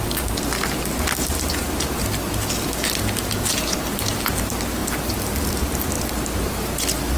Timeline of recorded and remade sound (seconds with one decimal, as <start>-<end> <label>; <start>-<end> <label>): 0.0-7.2 recorded